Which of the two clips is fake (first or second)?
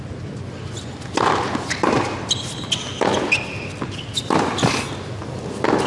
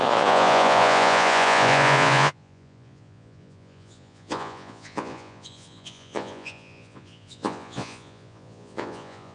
second